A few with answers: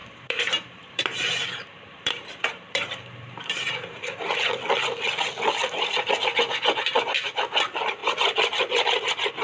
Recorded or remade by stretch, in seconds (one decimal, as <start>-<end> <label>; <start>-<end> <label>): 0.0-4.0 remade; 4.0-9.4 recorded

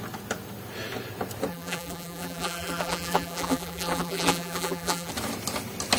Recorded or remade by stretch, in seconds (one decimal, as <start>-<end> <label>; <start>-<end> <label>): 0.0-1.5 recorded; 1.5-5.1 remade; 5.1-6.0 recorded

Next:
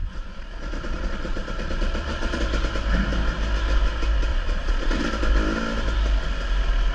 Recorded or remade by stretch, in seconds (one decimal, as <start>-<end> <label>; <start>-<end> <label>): 0.0-2.4 remade; 2.4-4.3 recorded; 4.3-5.0 remade; 5.0-6.9 recorded

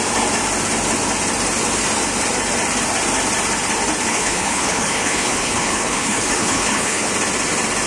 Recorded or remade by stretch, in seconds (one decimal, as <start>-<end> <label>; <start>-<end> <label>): 0.0-4.1 recorded; 4.1-7.1 remade; 7.1-7.9 recorded

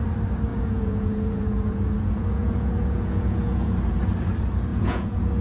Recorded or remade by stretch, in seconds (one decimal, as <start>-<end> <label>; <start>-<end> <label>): 0.0-0.5 recorded; 0.5-3.7 remade; 3.7-4.7 recorded; 4.7-5.4 remade

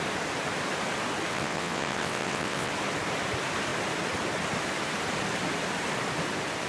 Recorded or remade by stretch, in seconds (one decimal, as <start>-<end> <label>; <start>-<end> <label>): 0.0-1.3 recorded; 1.3-2.7 remade; 2.7-6.7 recorded

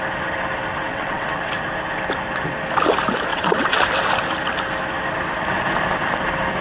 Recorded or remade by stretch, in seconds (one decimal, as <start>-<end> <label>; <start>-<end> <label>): 0.0-0.9 recorded; 0.9-1.5 remade; 1.5-3.3 recorded; 3.3-3.8 remade; 3.8-6.6 recorded